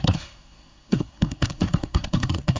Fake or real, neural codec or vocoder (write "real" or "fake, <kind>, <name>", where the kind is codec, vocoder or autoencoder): fake, codec, SNAC